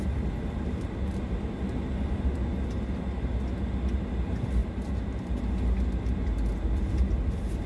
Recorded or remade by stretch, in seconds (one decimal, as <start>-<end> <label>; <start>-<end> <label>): 0.0-4.6 recorded; 4.6-5.4 remade; 5.4-7.7 recorded